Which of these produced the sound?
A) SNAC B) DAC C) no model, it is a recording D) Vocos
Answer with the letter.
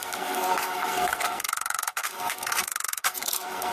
A